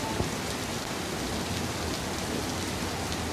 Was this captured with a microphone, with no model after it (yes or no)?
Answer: yes